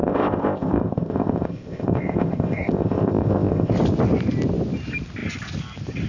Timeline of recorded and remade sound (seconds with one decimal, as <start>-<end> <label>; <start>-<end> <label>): 0.0-3.7 remade; 3.7-6.1 recorded